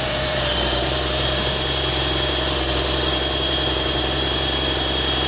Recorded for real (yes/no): no